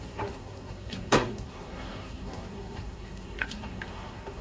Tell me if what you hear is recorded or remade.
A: remade